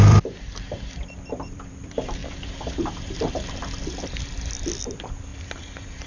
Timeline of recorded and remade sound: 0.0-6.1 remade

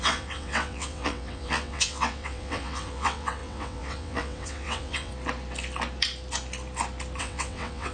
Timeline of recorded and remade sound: 0.0-5.1 remade; 5.1-7.2 recorded; 7.2-7.9 remade

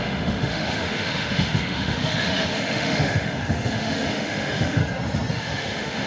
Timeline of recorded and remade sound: 0.0-4.8 remade; 4.8-5.3 recorded; 5.3-6.1 remade

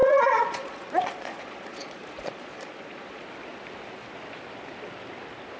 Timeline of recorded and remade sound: 0.0-3.2 remade; 3.2-5.6 recorded

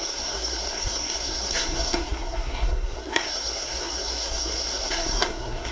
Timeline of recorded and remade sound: 0.0-5.7 remade